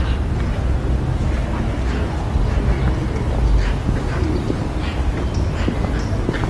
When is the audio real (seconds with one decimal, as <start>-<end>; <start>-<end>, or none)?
0.0-3.8; 4.6-6.5